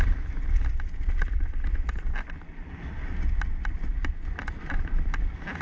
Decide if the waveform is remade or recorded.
recorded